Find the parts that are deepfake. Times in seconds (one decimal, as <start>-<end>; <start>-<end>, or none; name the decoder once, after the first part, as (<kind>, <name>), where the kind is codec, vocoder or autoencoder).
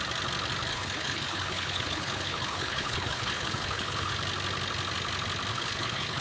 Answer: 0.7-4.1 (codec, HILCodec); 5.5-6.2